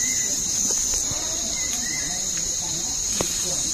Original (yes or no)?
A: no